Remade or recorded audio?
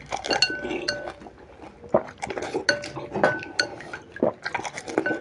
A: recorded